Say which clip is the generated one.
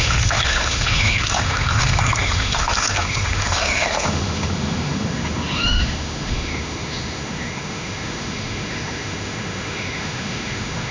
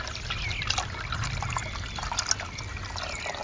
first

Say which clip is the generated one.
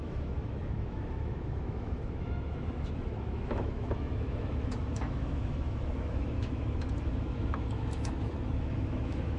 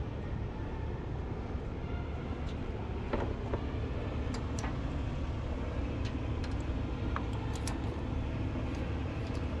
first